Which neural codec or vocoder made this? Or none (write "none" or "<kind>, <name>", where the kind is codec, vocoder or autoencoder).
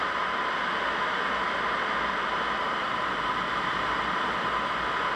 none